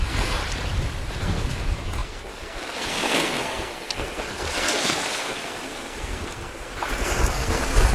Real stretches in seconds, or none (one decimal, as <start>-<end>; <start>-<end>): 0.4-1.2